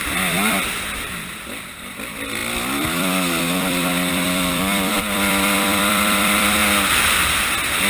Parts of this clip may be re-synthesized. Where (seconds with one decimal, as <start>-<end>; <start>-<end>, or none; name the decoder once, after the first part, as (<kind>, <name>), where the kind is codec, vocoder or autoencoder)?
0.0-6.6 (vocoder, BigVGAN v2)